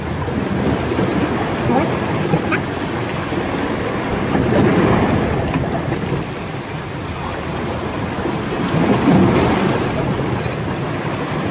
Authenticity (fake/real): real